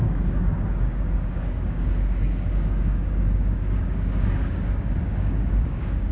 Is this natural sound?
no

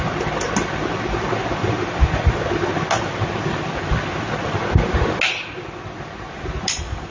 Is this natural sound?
yes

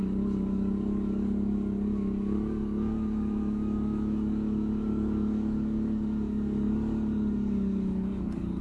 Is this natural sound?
no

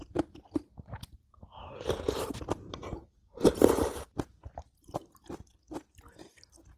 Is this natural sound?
yes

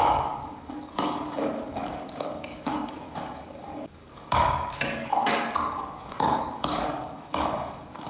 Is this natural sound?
no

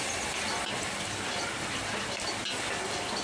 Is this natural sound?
yes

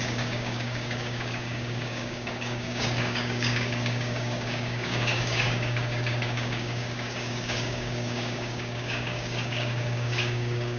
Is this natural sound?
no